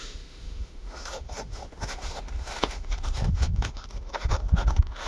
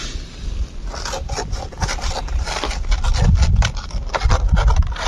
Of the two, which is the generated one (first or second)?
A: first